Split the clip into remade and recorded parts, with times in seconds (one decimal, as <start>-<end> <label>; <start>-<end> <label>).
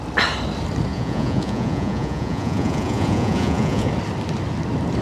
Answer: 0.0-0.9 recorded; 0.9-3.9 remade; 3.9-5.0 recorded